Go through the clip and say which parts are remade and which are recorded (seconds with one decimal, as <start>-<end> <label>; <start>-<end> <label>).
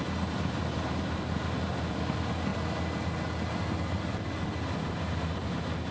0.0-5.9 recorded